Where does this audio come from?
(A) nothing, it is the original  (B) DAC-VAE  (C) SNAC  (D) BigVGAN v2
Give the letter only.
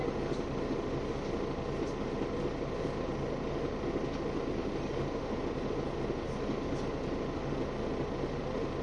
A